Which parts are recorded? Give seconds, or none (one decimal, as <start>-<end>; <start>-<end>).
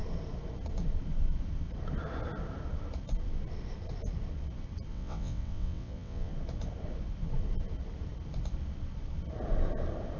0.0-4.9; 6.3-10.2